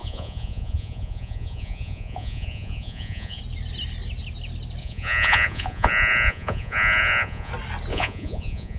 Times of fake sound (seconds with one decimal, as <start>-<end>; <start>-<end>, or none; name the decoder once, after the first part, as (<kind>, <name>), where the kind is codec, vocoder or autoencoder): 0.0-3.4 (vocoder, Vocos); 4.8-7.5; 7.9-8.8